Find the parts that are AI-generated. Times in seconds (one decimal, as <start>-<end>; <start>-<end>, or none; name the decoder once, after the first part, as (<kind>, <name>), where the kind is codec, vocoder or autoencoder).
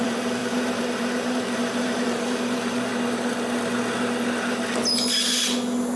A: 0.0-2.9 (vocoder, BigVGAN v2)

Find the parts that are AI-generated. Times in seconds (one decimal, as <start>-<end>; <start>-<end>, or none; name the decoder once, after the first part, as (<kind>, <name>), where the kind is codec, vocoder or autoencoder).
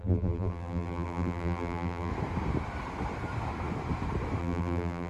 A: 0.0-2.1 (vocoder, BigVGAN v2); 4.4-5.1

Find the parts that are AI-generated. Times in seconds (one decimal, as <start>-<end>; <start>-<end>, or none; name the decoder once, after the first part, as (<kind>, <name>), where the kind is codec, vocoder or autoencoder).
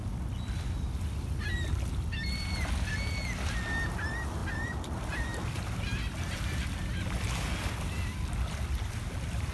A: 4.4-9.0 (vocoder, BigVGAN v2)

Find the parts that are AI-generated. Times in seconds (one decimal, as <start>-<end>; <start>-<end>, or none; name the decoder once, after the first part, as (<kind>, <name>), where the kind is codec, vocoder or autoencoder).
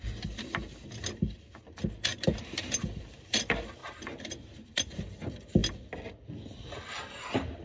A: 2.1-3.0 (vocoder, BigVGAN v2); 3.8-5.1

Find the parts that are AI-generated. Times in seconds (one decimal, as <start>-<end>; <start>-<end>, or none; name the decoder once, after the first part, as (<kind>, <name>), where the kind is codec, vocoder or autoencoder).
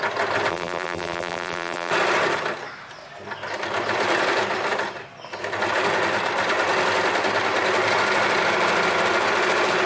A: 0.5-1.9 (vocoder, BigVGAN v2)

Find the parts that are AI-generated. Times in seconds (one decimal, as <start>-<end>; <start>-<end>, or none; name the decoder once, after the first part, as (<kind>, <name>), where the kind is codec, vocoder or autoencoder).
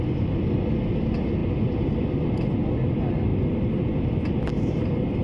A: none